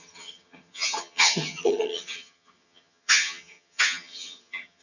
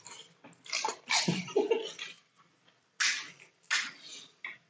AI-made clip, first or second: first